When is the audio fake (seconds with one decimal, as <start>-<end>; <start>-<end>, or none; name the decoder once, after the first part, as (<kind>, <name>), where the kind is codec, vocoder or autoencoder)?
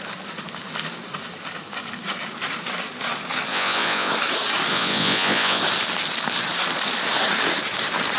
3.5-4.1 (vocoder, Vocos); 4.7-5.6